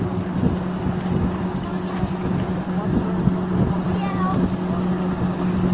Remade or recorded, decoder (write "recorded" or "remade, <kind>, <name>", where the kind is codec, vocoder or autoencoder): recorded